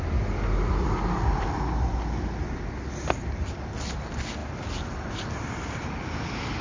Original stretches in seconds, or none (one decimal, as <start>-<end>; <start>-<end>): 0.0-6.6